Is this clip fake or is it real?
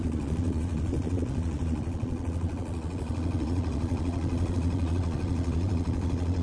fake